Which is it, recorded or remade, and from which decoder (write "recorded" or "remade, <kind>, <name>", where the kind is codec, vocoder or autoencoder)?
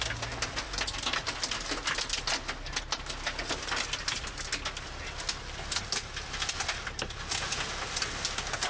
recorded